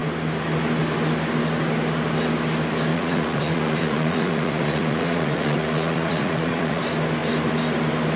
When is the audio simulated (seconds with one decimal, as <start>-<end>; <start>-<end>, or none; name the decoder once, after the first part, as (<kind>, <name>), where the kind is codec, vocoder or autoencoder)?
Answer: 2.9-6.8 (vocoder, Vocos)